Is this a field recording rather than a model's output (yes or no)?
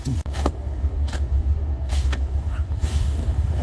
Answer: no